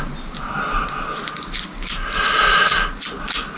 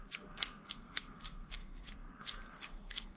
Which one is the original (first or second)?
first